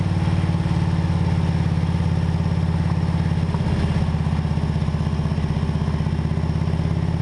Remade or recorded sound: recorded